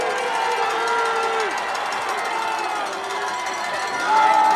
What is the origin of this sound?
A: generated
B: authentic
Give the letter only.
B